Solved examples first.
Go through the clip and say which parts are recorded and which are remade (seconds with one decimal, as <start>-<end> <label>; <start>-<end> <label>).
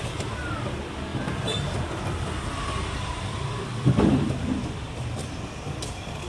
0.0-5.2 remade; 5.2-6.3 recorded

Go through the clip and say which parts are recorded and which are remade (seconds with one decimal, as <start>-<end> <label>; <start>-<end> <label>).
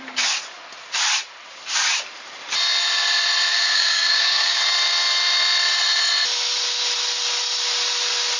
0.0-3.5 recorded; 3.5-4.6 remade; 4.6-8.4 recorded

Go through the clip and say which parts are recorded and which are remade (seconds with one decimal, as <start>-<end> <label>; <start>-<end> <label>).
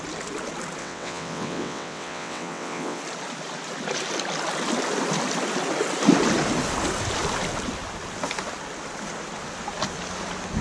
0.0-0.8 recorded; 0.8-3.0 remade; 3.0-10.6 recorded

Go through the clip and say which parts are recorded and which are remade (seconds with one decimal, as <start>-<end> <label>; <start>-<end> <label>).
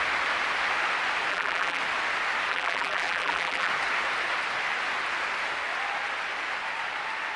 0.0-1.3 recorded; 1.3-1.8 remade; 1.8-2.5 recorded; 2.5-3.7 remade; 3.7-7.4 recorded